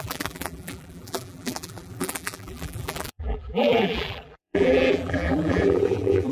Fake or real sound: fake